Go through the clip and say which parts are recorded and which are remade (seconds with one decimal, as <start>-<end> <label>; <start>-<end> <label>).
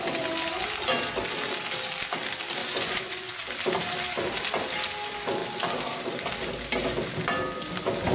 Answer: 0.0-2.6 recorded; 2.6-3.3 remade; 3.3-8.1 recorded